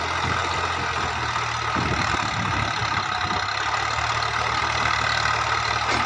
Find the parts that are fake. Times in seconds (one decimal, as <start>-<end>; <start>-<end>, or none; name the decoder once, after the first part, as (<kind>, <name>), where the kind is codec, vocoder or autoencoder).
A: none